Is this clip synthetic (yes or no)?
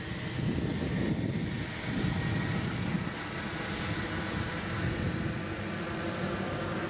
no